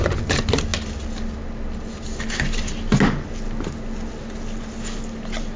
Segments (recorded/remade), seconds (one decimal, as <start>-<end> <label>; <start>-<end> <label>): 0.0-5.6 recorded